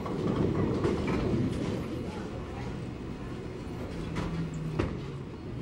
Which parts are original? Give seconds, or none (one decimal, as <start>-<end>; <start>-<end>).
0.0-5.6